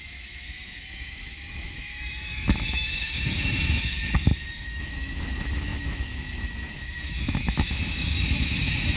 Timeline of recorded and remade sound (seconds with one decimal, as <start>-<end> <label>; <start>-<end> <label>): 0.0-9.0 remade